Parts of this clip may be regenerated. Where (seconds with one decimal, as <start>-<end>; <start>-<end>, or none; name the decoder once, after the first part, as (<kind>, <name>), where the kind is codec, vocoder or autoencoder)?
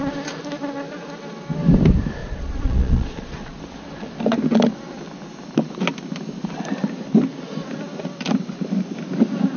2.2-3.6 (vocoder, Vocos)